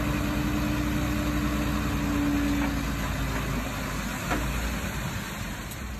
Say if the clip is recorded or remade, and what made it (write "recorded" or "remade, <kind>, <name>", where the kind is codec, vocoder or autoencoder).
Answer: recorded